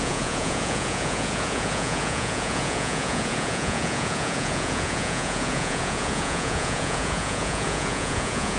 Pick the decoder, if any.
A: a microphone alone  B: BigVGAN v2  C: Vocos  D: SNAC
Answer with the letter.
C